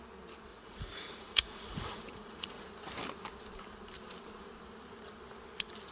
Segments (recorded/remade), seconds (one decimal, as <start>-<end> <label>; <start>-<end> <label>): 0.0-0.5 recorded; 0.5-2.6 remade; 2.6-5.9 recorded